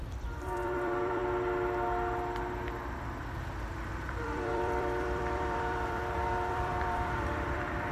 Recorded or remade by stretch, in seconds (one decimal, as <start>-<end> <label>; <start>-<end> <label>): 0.0-1.2 remade; 1.2-3.7 recorded; 3.7-7.9 remade